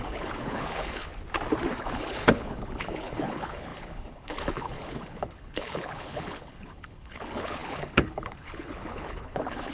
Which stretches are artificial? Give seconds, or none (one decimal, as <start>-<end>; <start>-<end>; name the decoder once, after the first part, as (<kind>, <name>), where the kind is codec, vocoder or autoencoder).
0.0-1.1 (codec, HILCodec); 1.8-9.7